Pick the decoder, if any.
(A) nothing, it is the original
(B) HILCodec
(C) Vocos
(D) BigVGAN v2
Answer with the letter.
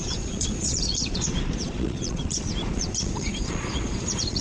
C